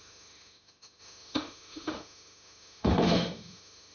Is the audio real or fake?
fake